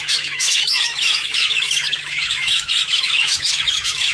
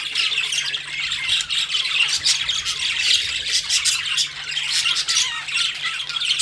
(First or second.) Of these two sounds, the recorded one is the second